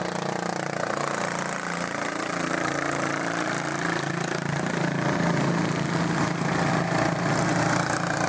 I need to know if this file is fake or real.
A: real